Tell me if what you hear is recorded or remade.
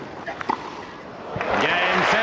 recorded